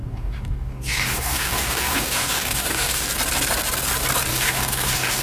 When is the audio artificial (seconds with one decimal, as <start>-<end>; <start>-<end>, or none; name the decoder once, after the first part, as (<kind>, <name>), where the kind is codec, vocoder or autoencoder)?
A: 0.0-3.1 (codec, DAC); 4.3-5.2